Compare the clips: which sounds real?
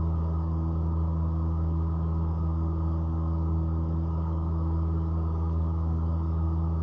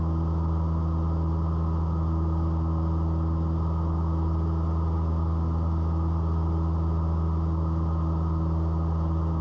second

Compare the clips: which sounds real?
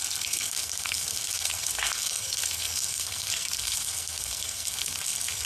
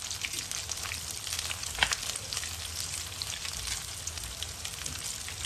second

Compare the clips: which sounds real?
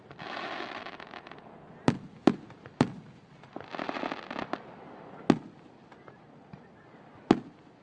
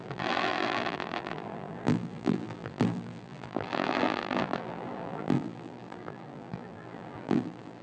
first